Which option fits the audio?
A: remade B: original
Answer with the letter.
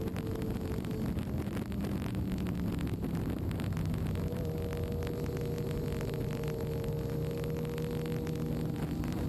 B